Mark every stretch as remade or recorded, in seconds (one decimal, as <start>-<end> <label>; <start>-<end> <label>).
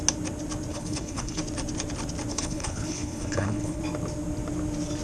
0.0-0.7 recorded; 0.7-1.4 remade; 1.4-2.3 recorded; 2.3-3.8 remade; 3.8-5.0 recorded